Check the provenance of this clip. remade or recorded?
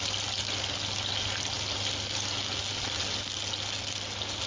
recorded